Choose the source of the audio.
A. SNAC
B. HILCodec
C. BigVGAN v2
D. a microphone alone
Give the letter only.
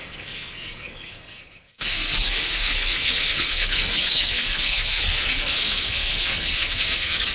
A